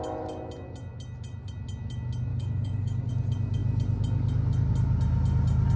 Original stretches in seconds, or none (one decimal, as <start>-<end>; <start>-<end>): 0.0-2.3; 3.1-5.8